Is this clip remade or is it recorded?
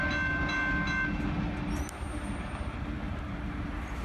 recorded